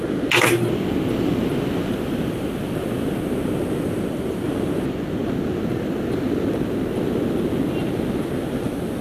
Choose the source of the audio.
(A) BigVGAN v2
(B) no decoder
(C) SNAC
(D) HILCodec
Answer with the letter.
B